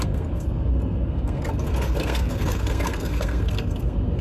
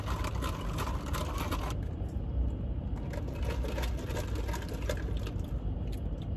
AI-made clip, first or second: first